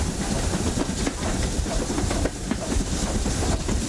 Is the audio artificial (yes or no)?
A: no